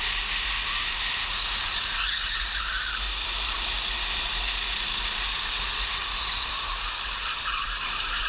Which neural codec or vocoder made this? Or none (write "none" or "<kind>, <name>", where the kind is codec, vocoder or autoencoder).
vocoder, BigVGAN v2